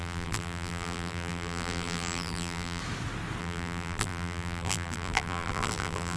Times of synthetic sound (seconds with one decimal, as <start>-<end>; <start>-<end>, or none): 0.0-2.8; 3.4-6.2